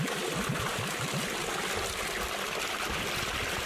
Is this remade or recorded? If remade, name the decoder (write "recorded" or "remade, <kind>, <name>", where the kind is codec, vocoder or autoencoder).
recorded